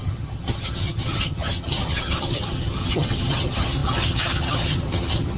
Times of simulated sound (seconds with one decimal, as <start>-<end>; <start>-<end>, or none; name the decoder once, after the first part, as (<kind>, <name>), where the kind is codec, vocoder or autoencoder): 0.0-5.4 (vocoder, HiFi-GAN)